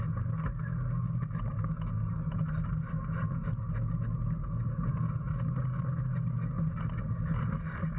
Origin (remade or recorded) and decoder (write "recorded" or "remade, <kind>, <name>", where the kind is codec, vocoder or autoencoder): recorded